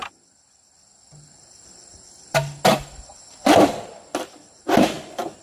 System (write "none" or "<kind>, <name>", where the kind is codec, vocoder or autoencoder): none